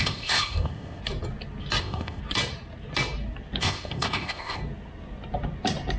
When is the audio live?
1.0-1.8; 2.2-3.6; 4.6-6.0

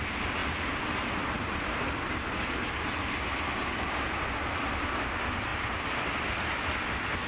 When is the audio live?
0.0-7.3

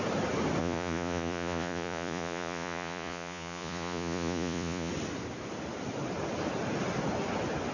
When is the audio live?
0.0-0.6; 4.9-7.7

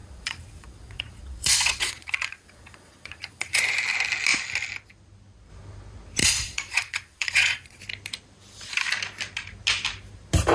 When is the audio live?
3.6-6.2; 7.8-10.5